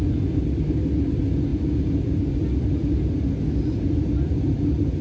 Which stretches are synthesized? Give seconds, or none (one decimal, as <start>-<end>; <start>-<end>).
none